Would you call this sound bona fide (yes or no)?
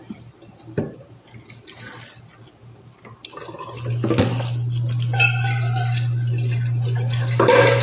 yes